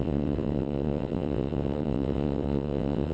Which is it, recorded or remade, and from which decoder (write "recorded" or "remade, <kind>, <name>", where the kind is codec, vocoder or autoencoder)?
remade, vocoder, WaveNeXt